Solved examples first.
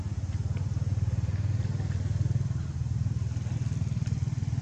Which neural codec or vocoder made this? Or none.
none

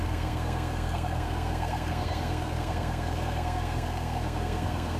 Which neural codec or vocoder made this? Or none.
codec, SNAC